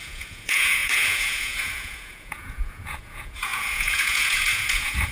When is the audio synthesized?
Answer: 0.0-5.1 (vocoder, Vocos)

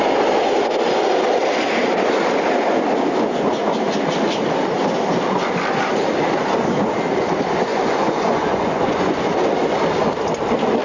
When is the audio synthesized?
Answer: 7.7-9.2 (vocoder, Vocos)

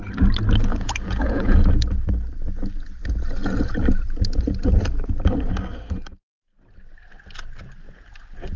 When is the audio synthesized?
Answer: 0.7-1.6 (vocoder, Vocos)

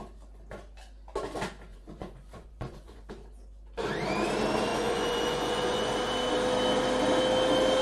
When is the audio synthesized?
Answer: 1.7-3.0 (vocoder, Vocos); 4.7-5.9

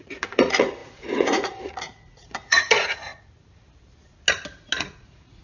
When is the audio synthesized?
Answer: 0.0-3.1 (vocoder, Vocos); 4.8-5.4